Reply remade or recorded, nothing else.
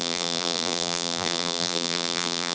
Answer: remade